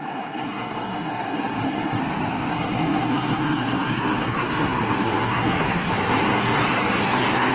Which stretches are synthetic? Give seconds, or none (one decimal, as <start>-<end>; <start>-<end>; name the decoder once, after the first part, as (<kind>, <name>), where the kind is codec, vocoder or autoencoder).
0.0-2.0 (codec, SNAC); 2.5-7.5